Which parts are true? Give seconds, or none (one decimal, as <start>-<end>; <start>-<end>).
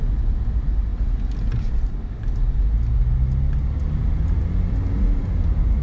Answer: 0.0-5.8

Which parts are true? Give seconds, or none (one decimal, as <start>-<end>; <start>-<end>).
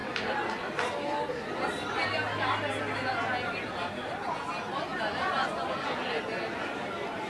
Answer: 0.0-7.3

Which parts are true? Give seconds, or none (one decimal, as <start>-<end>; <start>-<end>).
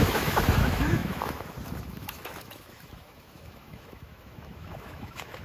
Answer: none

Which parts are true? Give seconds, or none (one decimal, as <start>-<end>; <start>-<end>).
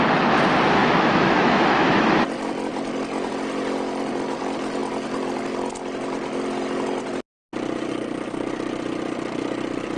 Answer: 0.0-0.8; 2.1-10.0